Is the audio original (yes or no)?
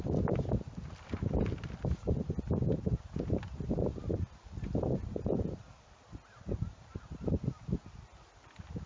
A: yes